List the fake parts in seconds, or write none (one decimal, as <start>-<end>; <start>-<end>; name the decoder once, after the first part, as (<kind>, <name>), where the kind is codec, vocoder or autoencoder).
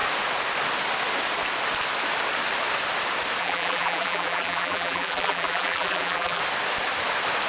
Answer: 3.4-6.4 (vocoder, BigVGAN v2)